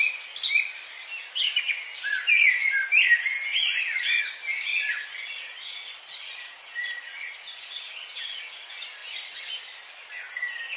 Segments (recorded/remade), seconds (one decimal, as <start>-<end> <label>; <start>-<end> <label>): 0.0-3.5 recorded; 3.5-4.2 remade; 4.2-4.7 recorded; 4.7-8.5 remade; 8.5-9.0 recorded; 9.0-10.4 remade; 10.4-10.8 recorded